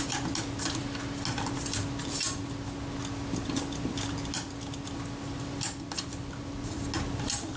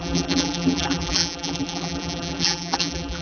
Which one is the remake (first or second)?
second